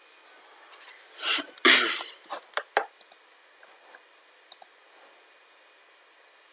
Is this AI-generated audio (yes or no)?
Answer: no